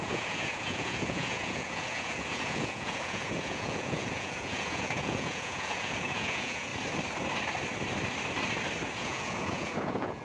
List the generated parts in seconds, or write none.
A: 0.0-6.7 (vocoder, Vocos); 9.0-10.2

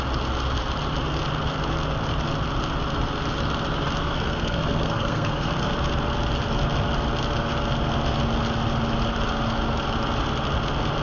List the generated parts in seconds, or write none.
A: 4.0-5.5 (codec, SNAC)

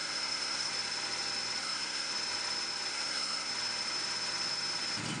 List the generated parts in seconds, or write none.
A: 0.0-0.7 (codec, SNAC); 1.6-2.1; 2.9-3.5

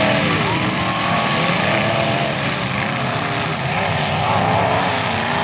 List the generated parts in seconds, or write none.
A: 3.5-4.0 (vocoder, BigVGAN v2)

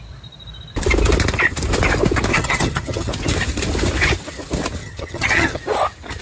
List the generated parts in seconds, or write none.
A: 2.3-3.1 (vocoder, HiFi-GAN); 4.8-5.6